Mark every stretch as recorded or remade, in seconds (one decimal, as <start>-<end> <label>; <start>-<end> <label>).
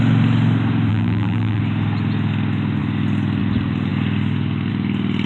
0.0-0.9 recorded; 0.9-1.6 remade; 1.6-5.3 recorded